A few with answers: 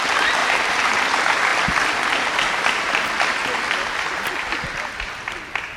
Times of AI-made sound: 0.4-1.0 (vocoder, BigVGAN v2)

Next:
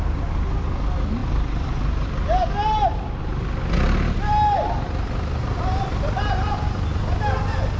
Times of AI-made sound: none

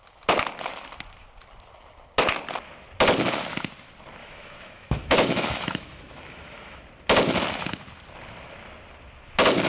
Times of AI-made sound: 4.2-6.8 (autoencoder, DAC-VAE)